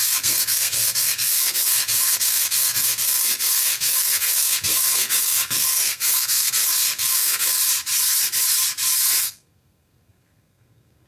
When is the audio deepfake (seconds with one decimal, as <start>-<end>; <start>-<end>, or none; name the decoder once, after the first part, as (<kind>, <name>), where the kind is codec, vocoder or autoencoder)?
0.0-7.6 (codec, SNAC); 9.2-11.1